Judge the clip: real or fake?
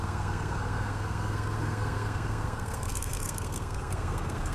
fake